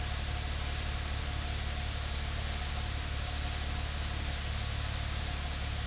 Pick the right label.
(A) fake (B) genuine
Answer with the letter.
B